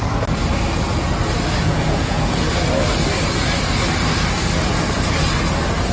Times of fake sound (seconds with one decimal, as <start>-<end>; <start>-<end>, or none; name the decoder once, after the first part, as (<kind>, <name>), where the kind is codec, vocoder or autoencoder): 1.6-2.5 (vocoder, Vocos)